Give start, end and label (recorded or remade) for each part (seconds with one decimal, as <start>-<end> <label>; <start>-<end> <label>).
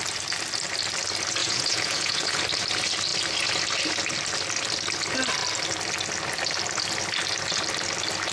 0.0-1.4 recorded; 1.4-2.4 remade; 2.4-8.3 recorded